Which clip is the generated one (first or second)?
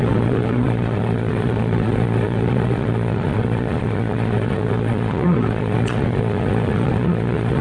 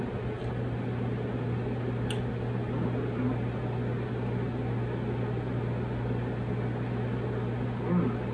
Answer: first